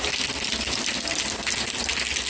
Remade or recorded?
recorded